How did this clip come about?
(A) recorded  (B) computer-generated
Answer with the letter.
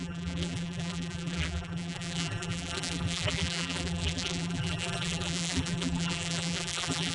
B